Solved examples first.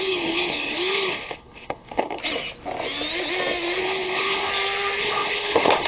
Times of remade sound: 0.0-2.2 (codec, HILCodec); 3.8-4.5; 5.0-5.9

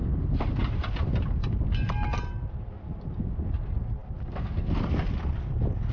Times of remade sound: none